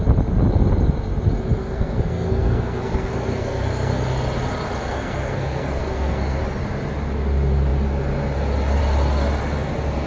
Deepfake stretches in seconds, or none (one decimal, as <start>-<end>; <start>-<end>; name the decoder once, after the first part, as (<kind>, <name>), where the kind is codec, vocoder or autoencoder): 1.6-4.0 (codec, SNAC); 4.9-6.4